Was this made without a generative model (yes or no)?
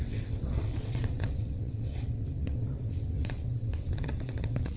no